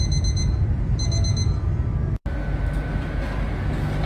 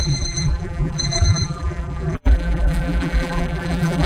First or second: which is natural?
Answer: first